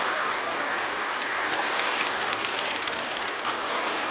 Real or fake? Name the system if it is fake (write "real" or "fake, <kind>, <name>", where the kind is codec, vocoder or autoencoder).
fake, codec, DAC